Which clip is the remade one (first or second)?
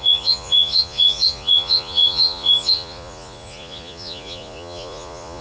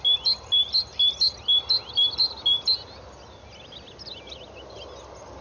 first